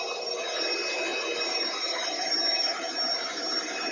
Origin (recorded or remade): recorded